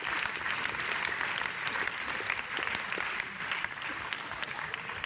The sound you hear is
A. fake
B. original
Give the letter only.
A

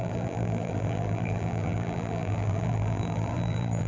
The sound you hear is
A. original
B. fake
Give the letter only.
B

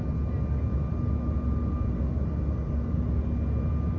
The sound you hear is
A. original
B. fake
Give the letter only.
A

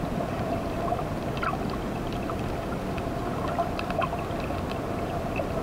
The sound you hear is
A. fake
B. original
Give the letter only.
B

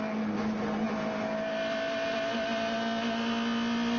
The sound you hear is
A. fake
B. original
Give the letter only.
B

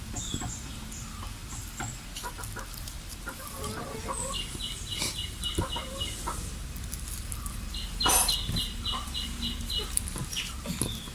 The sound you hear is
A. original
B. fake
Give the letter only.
A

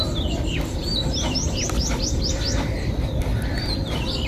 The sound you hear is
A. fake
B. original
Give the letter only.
B